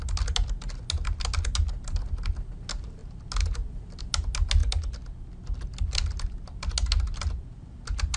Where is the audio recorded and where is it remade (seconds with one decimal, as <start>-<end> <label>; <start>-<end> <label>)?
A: 0.0-8.2 recorded

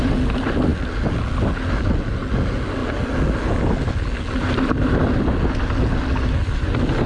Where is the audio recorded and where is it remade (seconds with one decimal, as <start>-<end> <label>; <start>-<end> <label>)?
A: 0.0-7.1 recorded

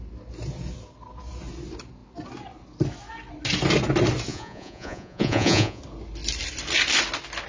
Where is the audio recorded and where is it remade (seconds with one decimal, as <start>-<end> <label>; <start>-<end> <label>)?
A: 0.0-4.3 recorded; 4.3-5.8 remade; 5.8-7.5 recorded